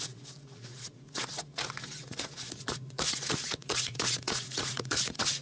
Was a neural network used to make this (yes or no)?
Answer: yes